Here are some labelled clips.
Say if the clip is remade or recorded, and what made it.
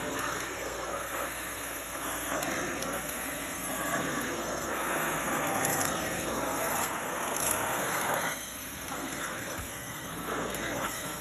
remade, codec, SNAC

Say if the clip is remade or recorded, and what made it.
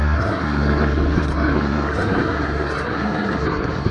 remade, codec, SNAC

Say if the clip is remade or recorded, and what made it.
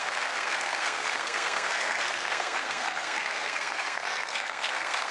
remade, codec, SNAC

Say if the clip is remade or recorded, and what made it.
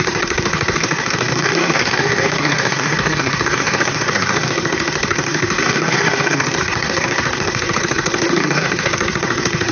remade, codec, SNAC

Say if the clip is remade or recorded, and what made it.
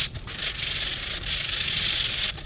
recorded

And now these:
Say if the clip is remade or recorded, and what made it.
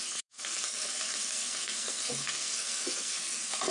remade, codec, SNAC